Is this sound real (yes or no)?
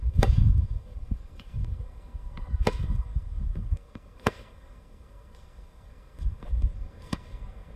no